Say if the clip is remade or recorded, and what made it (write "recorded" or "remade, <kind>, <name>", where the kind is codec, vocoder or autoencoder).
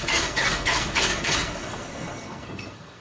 remade, codec, SNAC